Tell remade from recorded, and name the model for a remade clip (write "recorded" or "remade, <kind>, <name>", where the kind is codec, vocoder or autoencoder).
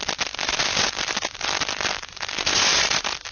recorded